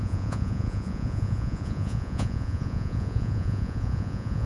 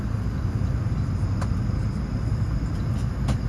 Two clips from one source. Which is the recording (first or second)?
second